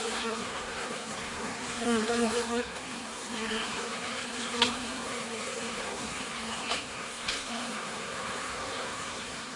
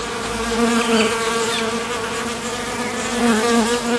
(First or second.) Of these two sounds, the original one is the second